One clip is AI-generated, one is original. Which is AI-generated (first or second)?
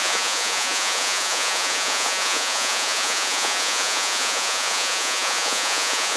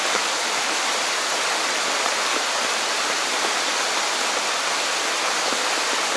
first